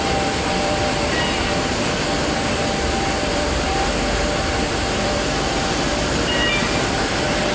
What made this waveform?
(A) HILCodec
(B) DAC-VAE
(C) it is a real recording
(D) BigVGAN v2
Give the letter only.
D